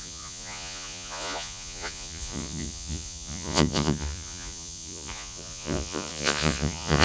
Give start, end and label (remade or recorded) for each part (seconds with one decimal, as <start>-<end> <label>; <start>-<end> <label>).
0.0-7.0 remade